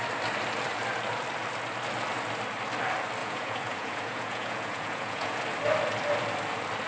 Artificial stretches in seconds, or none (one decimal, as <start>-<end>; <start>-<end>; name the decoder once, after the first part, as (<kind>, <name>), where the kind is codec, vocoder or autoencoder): 3.2-5.4 (vocoder, Vocos)